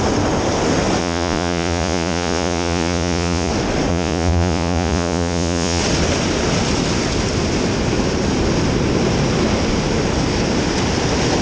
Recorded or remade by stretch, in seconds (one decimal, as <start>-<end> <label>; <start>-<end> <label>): 0.0-1.0 recorded; 1.0-3.5 remade; 3.5-3.9 recorded; 3.9-5.8 remade; 5.8-11.4 recorded